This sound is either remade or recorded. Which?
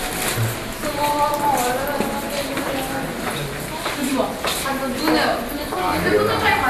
recorded